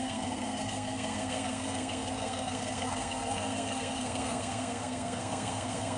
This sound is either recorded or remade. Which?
remade